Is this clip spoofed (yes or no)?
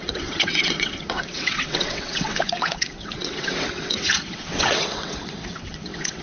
yes